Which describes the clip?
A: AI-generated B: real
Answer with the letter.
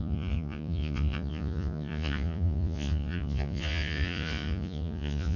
A